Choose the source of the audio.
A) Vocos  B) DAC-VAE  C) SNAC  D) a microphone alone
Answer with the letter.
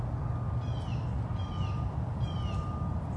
D